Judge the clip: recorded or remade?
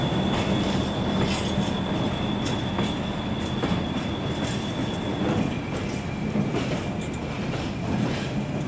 recorded